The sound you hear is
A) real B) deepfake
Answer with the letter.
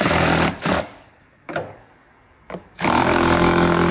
B